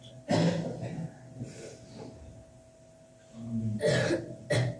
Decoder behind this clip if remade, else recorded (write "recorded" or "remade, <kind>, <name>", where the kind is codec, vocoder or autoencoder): recorded